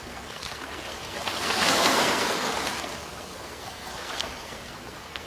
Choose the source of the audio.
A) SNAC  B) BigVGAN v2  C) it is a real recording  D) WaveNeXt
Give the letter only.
A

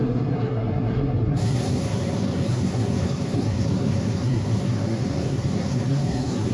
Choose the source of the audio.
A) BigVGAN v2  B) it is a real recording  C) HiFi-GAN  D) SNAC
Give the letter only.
D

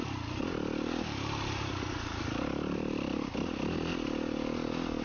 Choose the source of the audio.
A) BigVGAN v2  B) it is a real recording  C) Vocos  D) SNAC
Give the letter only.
B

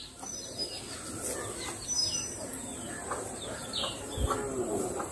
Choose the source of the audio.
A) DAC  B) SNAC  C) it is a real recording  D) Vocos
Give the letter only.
C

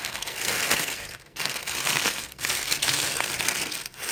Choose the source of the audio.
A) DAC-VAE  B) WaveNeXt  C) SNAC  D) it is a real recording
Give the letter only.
C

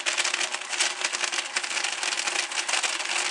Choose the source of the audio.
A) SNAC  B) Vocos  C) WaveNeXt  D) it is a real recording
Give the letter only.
D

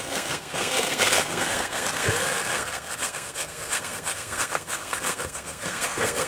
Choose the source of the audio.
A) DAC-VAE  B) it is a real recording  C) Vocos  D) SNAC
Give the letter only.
D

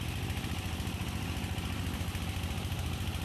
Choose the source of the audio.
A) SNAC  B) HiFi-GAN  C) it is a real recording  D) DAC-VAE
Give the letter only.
C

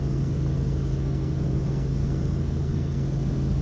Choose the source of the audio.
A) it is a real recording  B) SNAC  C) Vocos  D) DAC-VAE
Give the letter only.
B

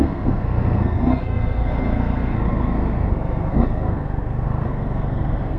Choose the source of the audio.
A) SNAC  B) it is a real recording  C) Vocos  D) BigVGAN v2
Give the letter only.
A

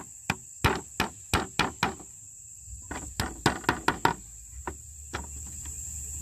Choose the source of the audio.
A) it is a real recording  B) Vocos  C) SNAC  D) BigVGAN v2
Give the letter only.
A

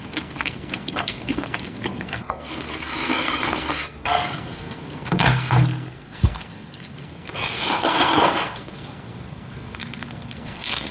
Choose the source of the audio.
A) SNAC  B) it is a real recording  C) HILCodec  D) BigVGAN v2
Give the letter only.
A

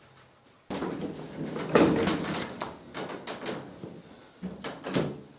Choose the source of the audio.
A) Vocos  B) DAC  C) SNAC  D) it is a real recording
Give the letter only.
D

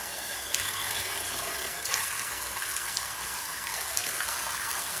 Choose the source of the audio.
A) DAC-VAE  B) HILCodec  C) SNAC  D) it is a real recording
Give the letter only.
C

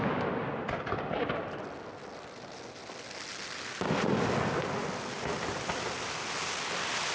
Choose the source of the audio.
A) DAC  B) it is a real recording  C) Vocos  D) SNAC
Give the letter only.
B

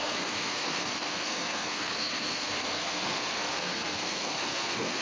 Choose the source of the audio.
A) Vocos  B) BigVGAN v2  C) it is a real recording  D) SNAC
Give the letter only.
D